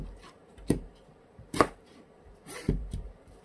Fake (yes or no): yes